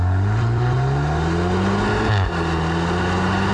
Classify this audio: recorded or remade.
recorded